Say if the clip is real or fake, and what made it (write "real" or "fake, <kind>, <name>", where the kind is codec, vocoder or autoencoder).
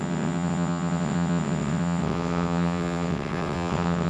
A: fake, vocoder, WaveNeXt